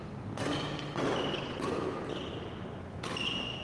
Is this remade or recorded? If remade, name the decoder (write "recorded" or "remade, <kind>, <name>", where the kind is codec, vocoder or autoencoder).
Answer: recorded